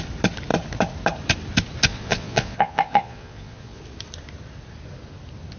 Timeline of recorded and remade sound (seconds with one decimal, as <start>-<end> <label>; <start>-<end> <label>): 0.0-1.9 recorded; 1.9-3.8 remade; 3.8-5.6 recorded